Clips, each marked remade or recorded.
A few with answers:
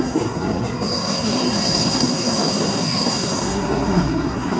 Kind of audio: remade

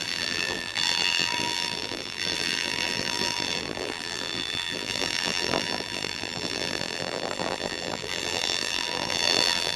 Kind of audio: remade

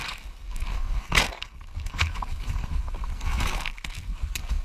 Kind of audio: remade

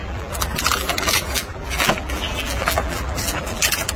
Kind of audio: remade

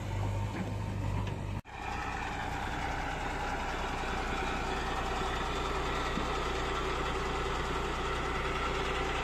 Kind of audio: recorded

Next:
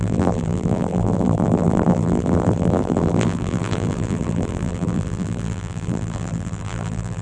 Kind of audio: remade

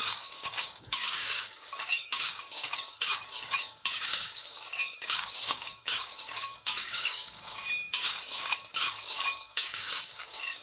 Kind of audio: remade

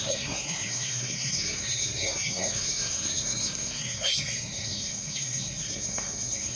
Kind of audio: remade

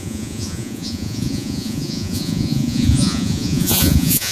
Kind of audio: remade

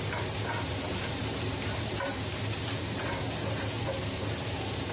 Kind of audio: remade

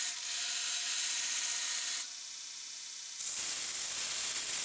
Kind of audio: recorded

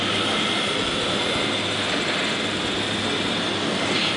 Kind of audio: recorded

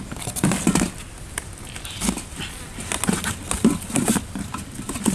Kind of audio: recorded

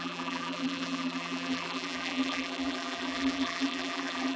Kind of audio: remade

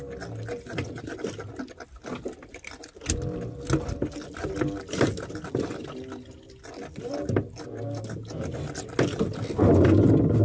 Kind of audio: recorded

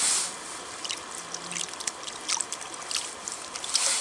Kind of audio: recorded